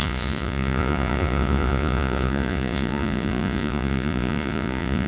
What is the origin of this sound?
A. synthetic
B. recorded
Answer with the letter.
A